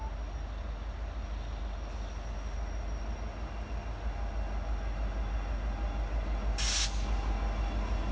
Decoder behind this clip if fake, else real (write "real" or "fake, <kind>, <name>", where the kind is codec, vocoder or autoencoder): real